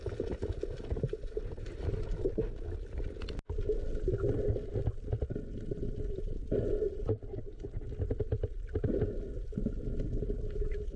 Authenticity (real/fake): real